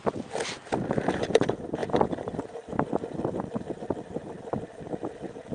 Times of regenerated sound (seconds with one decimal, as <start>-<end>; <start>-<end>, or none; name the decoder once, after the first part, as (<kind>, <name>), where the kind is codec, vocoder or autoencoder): none